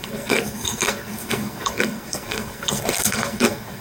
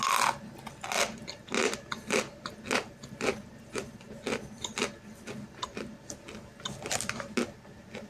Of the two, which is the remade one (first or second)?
first